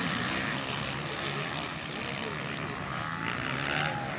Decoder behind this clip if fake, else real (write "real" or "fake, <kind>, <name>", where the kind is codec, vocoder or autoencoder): real